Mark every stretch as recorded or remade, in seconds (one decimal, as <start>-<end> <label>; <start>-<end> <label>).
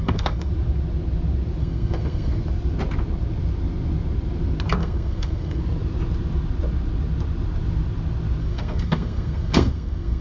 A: 0.0-0.5 remade; 0.5-1.6 recorded; 1.6-2.4 remade; 2.4-4.8 recorded; 4.8-5.6 remade; 5.6-8.4 recorded; 8.4-10.2 remade